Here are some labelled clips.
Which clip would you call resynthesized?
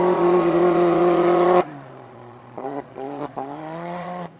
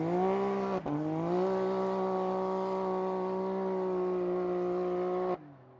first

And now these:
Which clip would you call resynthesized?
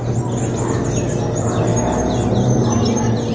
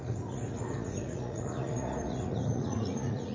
second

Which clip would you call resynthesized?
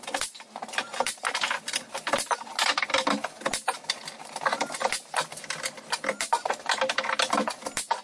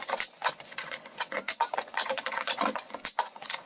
second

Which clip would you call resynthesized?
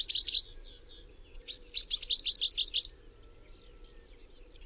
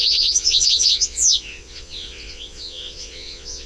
second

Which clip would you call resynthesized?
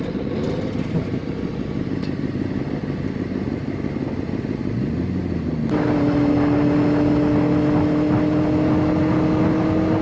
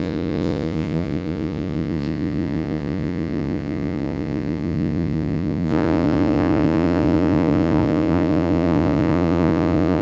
second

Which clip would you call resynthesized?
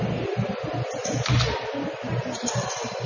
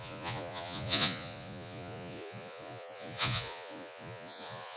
second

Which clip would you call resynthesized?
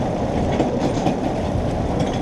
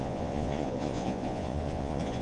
second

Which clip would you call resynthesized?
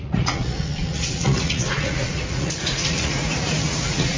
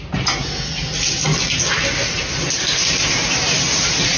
first